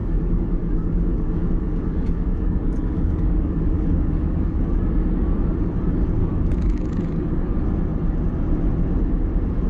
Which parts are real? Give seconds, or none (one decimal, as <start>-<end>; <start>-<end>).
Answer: 4.6-6.2; 7.5-9.7